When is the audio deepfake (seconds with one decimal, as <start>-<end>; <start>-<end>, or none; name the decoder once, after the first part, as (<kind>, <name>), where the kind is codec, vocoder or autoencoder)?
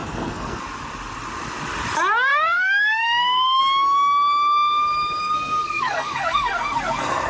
0.0-0.6 (codec, SNAC); 2.3-3.6; 5.2-7.3